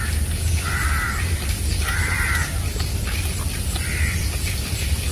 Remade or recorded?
recorded